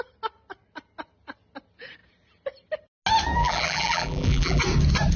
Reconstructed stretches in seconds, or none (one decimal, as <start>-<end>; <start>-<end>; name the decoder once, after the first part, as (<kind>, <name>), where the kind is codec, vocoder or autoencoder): 3.4-4.6 (vocoder, BigVGAN v2)